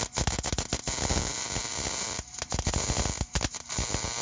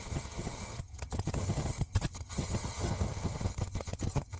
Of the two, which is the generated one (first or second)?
second